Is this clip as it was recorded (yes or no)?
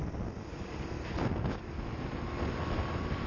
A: yes